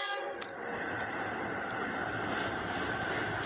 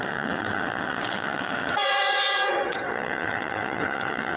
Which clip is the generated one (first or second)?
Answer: second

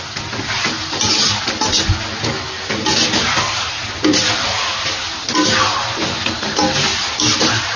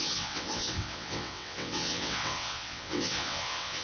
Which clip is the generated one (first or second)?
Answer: second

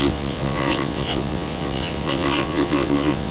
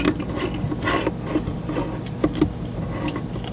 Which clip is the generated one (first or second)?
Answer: first